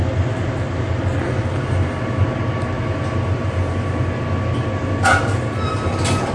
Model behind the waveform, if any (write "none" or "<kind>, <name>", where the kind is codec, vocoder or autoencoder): none